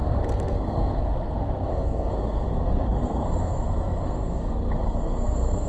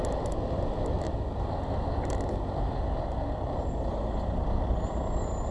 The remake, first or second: first